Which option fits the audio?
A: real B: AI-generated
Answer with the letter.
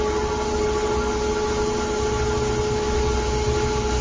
A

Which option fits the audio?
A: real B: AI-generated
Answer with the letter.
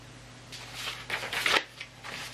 A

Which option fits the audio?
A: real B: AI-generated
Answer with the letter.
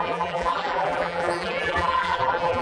B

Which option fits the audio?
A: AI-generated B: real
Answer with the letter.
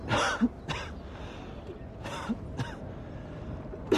B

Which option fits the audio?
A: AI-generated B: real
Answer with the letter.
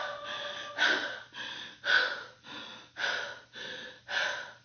B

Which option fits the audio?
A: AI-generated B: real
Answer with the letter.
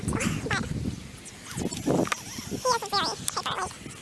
B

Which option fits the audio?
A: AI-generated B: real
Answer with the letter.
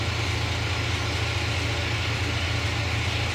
B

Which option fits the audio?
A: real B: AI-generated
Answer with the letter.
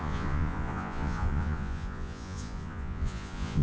B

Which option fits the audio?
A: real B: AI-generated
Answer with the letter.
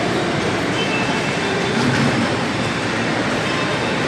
B